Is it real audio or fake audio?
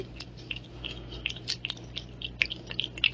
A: real